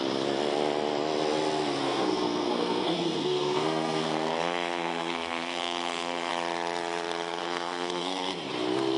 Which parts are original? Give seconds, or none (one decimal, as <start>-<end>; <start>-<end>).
0.0-1.8; 6.3-7.4; 8.3-9.0